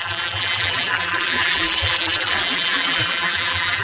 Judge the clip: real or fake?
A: fake